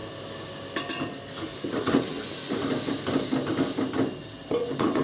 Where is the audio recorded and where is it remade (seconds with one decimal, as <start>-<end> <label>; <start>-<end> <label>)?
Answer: 0.0-1.5 recorded; 1.5-2.2 remade; 2.2-4.2 recorded; 4.2-5.0 remade